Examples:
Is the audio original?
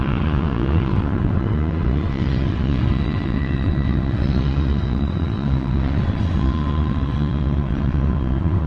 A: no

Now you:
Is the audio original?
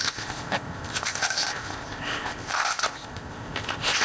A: no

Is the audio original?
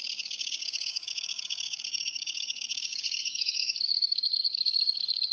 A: no